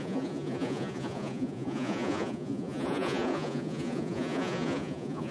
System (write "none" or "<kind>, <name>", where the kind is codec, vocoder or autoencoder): vocoder, Vocos